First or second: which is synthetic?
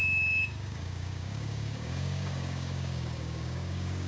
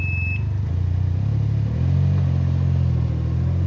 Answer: first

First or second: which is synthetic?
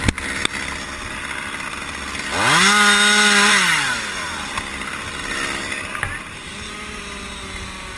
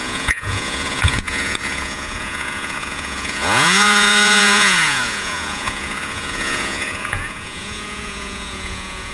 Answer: second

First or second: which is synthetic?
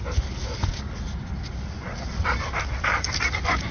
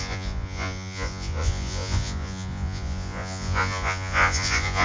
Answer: second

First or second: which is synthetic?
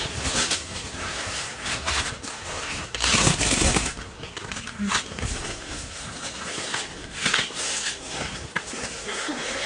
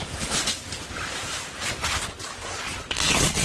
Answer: first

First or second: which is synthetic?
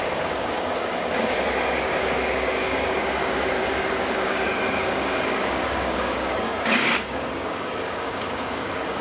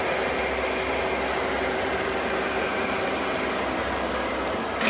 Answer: first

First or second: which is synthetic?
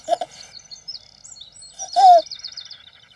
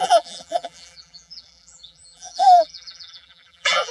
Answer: second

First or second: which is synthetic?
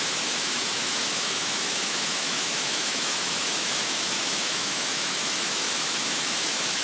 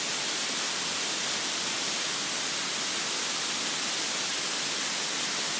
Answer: first